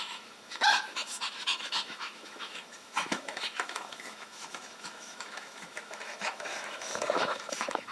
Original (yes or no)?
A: no